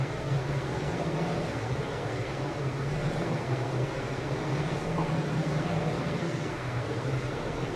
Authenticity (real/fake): fake